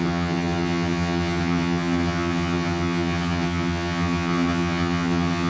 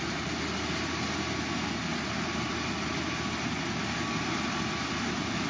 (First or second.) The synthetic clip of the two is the first